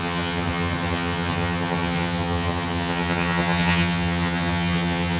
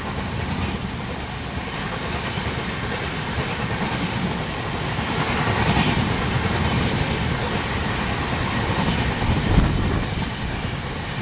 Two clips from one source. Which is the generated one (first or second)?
first